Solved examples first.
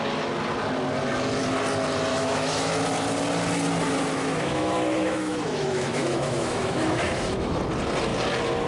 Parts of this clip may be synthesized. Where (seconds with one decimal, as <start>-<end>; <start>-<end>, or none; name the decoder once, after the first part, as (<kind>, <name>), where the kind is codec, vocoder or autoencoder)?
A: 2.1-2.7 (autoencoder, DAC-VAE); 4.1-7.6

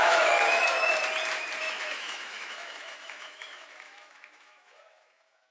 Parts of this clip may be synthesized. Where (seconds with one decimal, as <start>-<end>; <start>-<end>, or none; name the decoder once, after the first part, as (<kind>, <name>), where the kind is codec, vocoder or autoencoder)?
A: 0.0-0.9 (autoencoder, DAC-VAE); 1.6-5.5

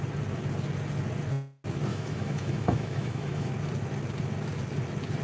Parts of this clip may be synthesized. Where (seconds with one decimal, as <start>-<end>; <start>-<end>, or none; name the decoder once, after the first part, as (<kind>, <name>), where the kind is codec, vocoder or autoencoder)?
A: 1.9-3.5 (autoencoder, DAC-VAE)

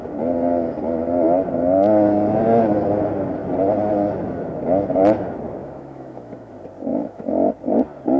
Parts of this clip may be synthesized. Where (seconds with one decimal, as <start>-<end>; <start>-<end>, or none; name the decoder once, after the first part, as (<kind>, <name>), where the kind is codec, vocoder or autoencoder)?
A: 5.6-6.5 (autoencoder, DAC-VAE); 6.9-7.5

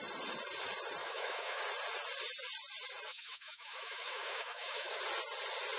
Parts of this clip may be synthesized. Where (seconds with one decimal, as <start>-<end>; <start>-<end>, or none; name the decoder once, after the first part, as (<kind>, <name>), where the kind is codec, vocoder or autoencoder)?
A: 1.0-1.6 (autoencoder, DAC-VAE); 3.1-5.0